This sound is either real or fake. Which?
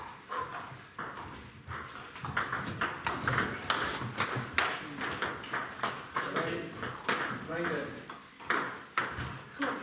real